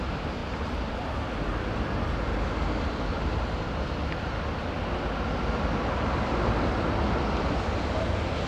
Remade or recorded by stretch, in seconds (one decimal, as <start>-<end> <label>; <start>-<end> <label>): 0.0-0.4 recorded; 0.4-1.3 remade; 1.3-8.5 recorded